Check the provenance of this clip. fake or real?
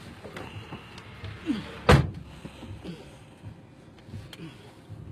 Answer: real